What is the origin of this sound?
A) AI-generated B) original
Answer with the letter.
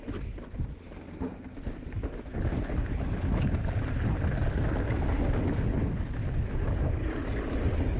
B